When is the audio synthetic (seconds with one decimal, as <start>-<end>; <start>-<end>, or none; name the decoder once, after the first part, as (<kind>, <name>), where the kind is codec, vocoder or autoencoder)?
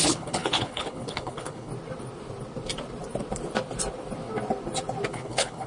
0.0-1.7 (codec, HILCodec); 5.1-5.7